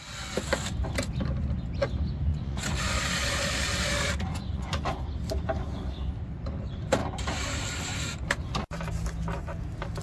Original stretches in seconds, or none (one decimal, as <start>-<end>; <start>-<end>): 0.0-2.3; 3.0-4.3; 5.0-10.0